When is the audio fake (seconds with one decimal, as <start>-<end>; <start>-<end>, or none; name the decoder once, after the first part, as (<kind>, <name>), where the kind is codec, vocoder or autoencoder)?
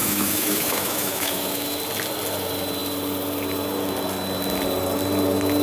0.0-1.8 (autoencoder, DAC-VAE)